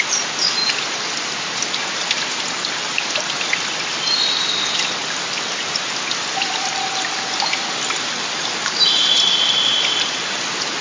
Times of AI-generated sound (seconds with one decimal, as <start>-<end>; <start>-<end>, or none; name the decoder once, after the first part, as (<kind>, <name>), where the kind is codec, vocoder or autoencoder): 0.0-0.6 (vocoder, BigVGAN v2); 2.7-10.8